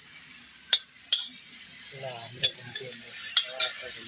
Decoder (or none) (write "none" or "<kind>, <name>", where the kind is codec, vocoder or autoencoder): none